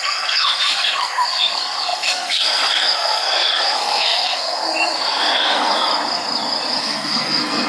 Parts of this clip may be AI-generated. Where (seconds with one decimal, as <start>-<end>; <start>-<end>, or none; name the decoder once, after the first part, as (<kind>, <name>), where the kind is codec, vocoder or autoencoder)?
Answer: 0.0-5.9 (codec, SNAC); 6.8-7.7